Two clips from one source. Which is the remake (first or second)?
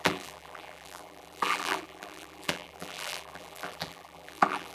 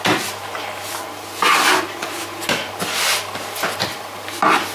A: first